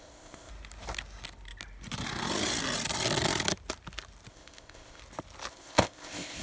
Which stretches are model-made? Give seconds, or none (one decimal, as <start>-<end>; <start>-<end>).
0.0-0.5; 4.3-5.0; 5.5-6.4